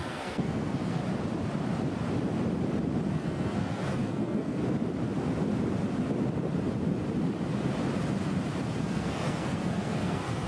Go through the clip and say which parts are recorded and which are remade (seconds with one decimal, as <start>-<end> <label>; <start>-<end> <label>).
0.0-1.0 remade; 1.0-3.1 recorded; 3.1-4.6 remade; 4.6-8.8 recorded; 8.8-10.5 remade